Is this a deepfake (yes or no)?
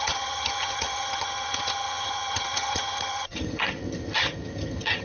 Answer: yes